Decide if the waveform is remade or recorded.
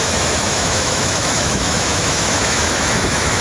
remade